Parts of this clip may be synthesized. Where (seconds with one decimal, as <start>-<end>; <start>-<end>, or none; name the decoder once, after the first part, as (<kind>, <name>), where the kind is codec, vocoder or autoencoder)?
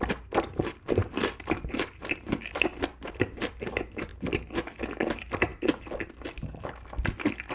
0.0-4.1 (vocoder, BigVGAN v2); 4.9-5.5